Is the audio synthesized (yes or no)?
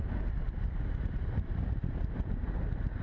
no